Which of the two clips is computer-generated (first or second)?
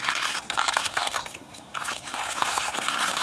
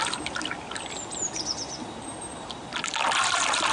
first